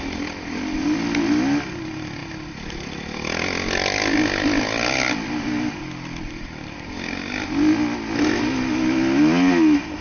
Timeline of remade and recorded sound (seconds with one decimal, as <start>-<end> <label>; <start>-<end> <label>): 0.0-10.0 recorded